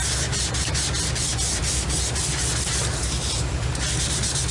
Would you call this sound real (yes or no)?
yes